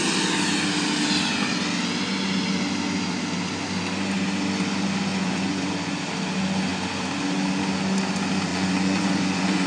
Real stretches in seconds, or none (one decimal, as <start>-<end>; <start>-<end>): 0.0-5.1; 5.7-8.5